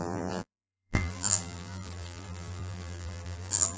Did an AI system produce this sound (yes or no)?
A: yes